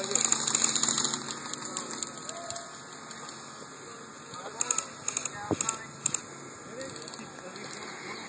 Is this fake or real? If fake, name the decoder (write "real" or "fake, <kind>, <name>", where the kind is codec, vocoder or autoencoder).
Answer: real